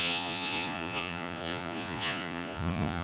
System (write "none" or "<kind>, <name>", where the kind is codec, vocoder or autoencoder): vocoder, Vocos